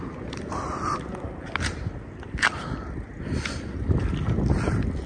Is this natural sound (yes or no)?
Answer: yes